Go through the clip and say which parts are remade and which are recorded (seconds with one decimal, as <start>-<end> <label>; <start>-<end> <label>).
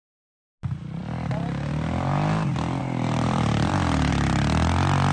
0.0-2.8 recorded; 2.8-4.1 remade; 4.1-5.1 recorded